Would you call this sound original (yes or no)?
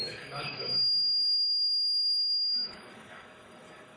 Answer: no